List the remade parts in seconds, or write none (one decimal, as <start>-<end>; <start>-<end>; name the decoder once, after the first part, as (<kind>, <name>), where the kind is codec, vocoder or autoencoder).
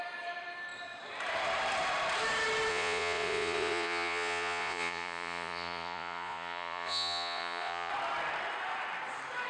2.7-7.9 (vocoder, Vocos)